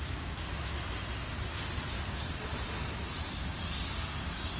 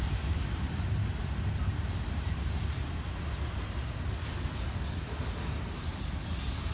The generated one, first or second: second